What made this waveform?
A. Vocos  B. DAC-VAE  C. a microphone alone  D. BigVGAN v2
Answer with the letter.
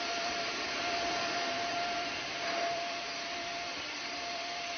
D